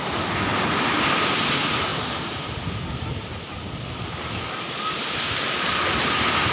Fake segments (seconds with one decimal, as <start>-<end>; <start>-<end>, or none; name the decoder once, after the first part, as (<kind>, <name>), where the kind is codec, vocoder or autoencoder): none

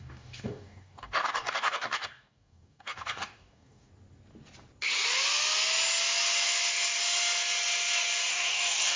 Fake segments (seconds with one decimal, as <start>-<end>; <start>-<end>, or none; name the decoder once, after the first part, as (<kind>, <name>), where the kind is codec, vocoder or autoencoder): 0.0-3.9 (codec, DAC); 8.3-9.0

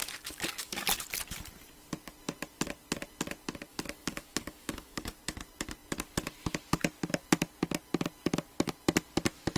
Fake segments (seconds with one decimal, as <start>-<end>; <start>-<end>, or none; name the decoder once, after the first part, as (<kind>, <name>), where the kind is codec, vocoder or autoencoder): 0.0-1.0 (codec, DAC); 3.7-5.2

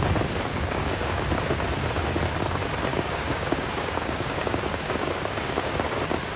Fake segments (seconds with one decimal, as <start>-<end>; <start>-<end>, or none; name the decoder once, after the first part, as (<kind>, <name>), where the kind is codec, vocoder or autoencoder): 0.5-1.2 (codec, DAC); 2.9-6.0

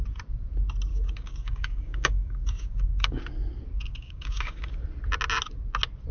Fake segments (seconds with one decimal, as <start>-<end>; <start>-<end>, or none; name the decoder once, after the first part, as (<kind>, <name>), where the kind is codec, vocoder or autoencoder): 0.9-3.2 (codec, DAC); 3.9-4.8

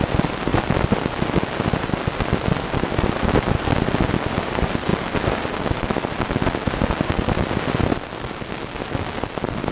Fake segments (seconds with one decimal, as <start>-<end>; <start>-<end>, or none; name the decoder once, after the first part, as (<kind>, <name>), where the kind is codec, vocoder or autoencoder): none